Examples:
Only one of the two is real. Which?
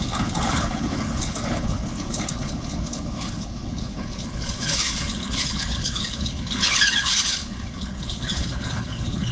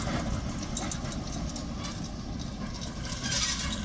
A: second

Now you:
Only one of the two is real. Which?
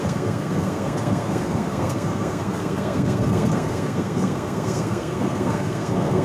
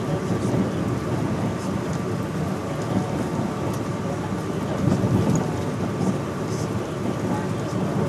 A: second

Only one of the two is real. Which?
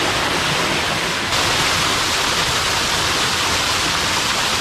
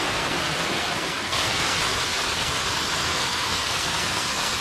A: first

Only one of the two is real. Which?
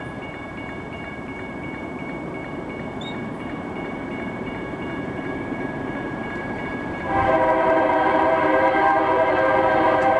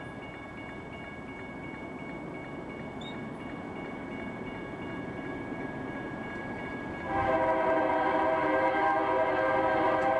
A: second